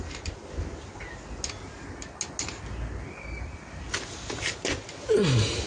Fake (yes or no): no